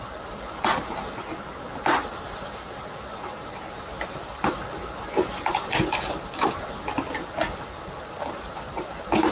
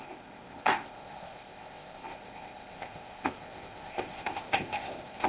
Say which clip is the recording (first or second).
first